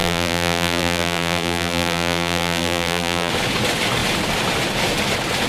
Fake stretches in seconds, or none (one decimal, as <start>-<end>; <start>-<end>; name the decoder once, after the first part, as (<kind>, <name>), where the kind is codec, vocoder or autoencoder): 0.0-3.3 (vocoder, BigVGAN v2)